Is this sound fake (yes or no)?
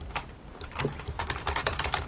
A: yes